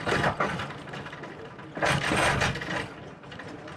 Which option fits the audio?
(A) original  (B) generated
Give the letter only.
A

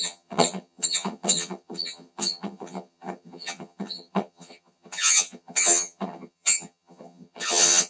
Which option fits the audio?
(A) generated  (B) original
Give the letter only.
A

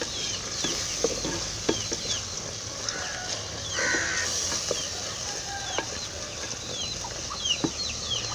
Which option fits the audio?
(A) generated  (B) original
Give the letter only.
B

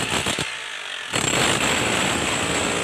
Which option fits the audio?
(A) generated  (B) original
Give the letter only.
B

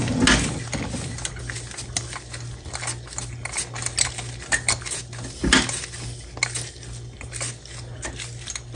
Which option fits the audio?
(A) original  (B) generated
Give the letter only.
A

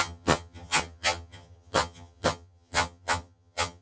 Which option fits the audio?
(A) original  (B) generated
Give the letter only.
B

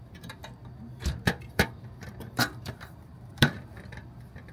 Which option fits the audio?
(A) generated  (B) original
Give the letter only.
A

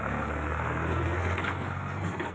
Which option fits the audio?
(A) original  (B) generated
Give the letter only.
B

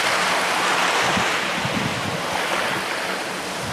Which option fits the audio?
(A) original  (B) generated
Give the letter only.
A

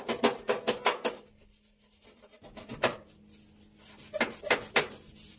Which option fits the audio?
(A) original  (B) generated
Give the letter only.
A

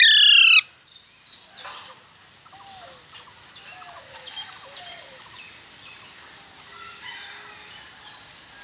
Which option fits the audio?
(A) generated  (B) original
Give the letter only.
B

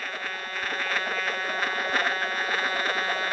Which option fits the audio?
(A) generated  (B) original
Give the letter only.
A